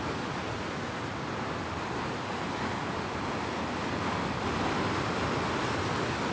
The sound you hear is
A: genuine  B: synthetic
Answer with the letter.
A